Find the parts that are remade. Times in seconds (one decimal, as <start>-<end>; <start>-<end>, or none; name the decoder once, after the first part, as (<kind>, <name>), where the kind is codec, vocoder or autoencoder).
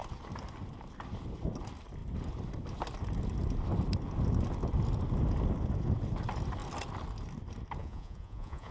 7.8-8.7 (vocoder, Vocos)